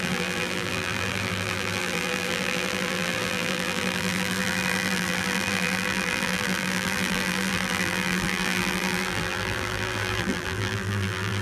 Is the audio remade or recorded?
remade